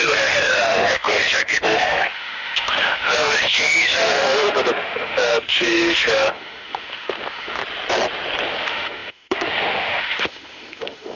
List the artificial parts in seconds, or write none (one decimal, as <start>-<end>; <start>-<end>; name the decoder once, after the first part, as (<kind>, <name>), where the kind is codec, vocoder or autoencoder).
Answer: 0.0-7.6 (autoencoder, DAC-VAE); 8.5-11.2